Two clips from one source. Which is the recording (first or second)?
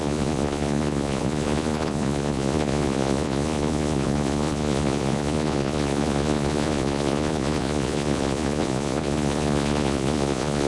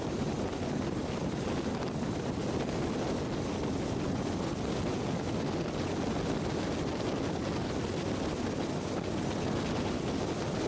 second